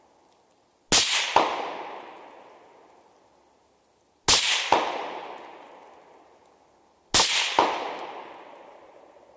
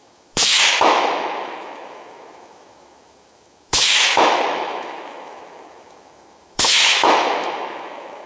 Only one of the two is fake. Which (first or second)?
second